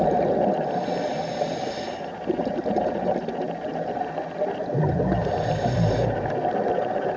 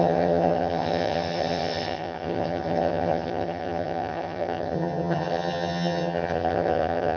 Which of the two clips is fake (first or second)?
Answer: second